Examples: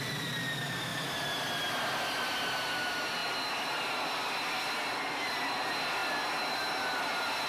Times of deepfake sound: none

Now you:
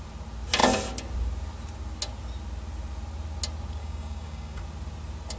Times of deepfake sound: 3.8-4.6 (codec, DAC)

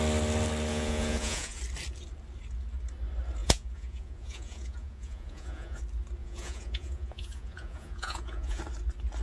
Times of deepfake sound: 0.7-1.6 (vocoder, Vocos); 3.4-5.8; 6.2-8.6

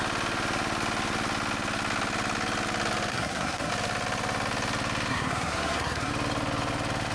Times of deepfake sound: 3.1-3.7 (codec, SNAC); 5.1-6.1

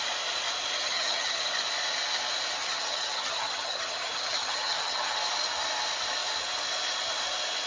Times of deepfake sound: 0.8-1.4 (vocoder, HiFi-GAN); 2.6-5.2

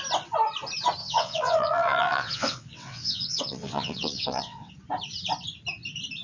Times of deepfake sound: 1.0-4.7 (vocoder, WaveNeXt)

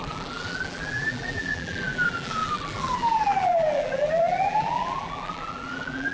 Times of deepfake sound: 0.0-6.1 (vocoder, BigVGAN v2)